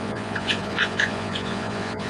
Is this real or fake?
fake